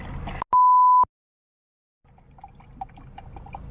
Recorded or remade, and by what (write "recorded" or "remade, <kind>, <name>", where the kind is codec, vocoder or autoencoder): recorded